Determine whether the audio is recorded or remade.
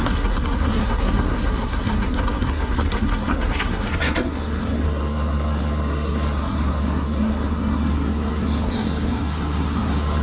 remade